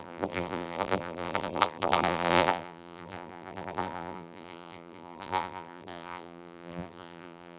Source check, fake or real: fake